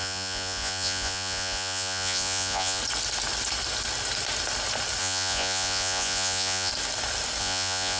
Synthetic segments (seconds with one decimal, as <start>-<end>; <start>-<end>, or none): 0.0-2.8; 5.0-6.7; 7.4-8.0